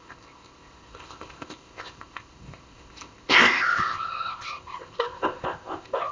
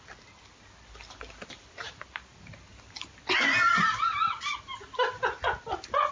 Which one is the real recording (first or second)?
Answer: second